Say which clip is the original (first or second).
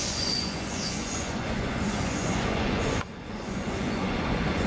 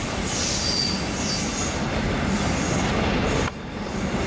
second